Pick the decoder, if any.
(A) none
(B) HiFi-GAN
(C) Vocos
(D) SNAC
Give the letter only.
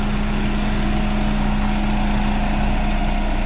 A